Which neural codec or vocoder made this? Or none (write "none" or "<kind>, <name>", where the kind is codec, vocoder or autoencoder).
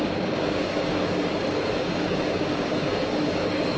codec, DAC